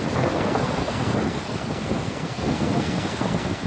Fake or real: fake